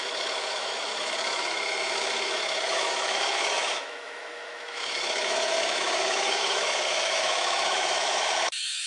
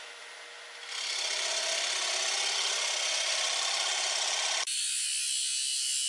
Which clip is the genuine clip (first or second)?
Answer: second